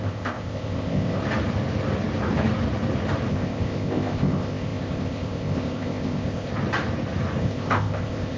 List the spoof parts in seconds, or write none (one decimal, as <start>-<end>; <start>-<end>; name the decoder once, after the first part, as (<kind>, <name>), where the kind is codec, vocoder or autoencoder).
0.0-1.2 (codec, ZipCodec); 3.3-6.5; 7.4-8.4